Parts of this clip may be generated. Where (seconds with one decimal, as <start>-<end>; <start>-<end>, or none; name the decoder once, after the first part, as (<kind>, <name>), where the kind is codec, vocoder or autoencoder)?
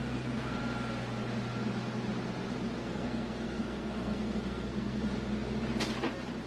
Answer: 0.0-0.6 (codec, SNAC); 2.8-5.0